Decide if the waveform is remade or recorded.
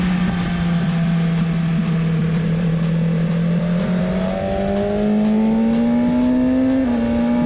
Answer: recorded